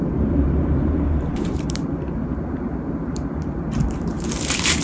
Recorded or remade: remade